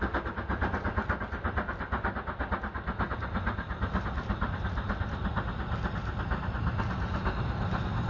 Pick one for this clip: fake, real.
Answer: real